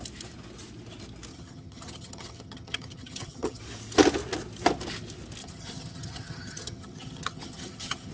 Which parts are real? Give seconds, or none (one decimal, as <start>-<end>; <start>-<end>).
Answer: 0.0-1.3; 3.6-5.4